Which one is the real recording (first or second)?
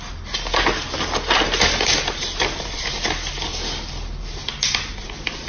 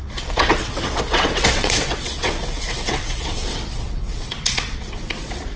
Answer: first